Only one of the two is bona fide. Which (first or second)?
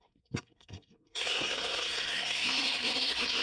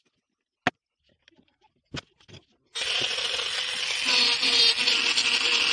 second